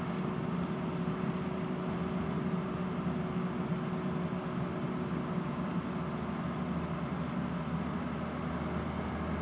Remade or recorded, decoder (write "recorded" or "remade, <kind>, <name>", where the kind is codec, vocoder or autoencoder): recorded